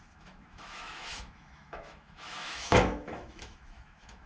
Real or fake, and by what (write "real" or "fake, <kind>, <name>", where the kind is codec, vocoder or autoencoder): fake, autoencoder, DAC-VAE